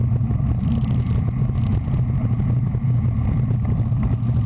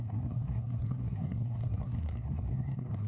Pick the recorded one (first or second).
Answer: first